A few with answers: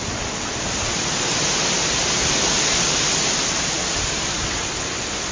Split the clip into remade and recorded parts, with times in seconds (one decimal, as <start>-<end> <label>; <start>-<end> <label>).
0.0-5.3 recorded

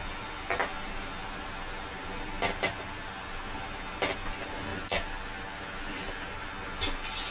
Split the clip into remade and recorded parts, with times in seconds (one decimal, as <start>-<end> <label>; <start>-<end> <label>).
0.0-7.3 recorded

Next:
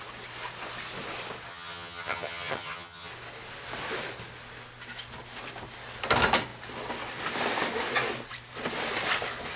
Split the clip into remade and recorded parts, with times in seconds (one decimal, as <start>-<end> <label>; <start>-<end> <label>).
0.0-1.5 recorded; 1.5-3.1 remade; 3.1-9.6 recorded

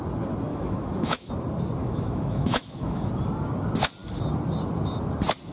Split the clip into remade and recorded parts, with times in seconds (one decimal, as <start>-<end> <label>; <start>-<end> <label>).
0.0-0.5 recorded; 0.5-1.3 remade; 1.3-1.8 recorded; 1.8-3.1 remade; 3.1-5.5 recorded